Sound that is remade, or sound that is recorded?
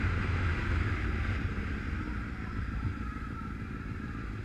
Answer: recorded